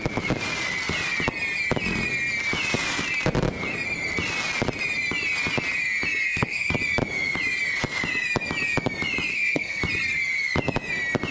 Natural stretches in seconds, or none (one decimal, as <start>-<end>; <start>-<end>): 0.0-6.2; 6.7-9.3; 9.8-11.3